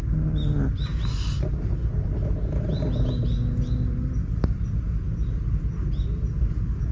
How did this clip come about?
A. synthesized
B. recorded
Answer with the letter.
B